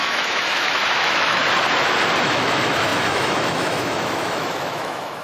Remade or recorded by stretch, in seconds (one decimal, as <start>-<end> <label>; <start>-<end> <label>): 0.0-1.4 remade; 1.4-2.2 recorded; 2.2-5.2 remade